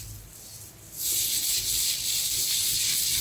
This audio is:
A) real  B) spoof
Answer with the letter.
B